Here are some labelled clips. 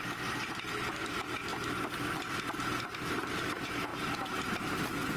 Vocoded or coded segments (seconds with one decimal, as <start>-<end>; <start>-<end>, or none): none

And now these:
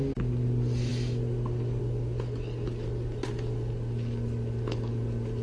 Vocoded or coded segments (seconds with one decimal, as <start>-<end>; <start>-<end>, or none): none

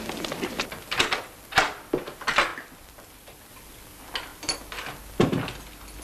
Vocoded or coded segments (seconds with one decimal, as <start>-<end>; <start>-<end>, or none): none